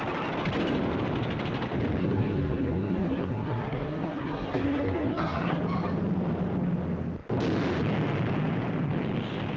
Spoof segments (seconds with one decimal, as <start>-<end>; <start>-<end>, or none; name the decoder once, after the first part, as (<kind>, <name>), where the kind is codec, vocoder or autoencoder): 2.0-5.6 (codec, SNAC)